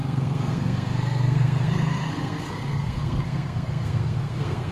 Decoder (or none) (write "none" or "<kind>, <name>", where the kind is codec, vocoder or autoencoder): codec, SNAC